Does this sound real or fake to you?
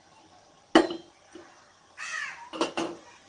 real